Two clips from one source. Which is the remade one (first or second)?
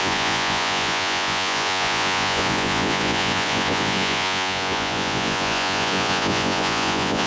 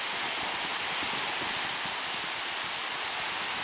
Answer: first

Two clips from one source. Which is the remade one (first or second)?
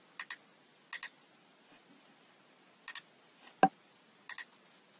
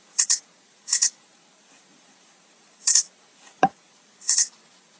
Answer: second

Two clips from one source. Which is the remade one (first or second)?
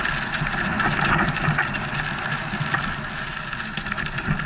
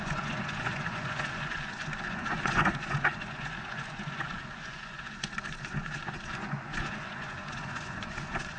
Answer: second